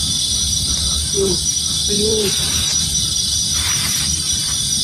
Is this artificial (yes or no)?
yes